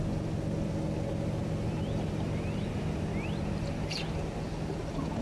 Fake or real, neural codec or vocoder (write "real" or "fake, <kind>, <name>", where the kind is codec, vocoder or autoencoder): real